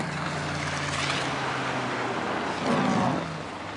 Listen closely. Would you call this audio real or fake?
real